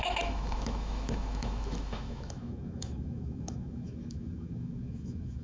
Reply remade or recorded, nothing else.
remade